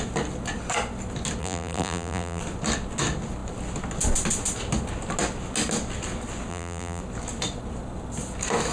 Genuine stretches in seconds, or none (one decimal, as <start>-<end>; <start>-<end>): 0.0-1.4; 2.4-6.5; 7.0-8.7